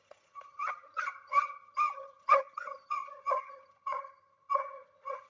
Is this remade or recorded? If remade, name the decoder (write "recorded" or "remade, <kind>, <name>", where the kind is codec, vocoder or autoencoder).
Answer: remade, vocoder, HiFi-GAN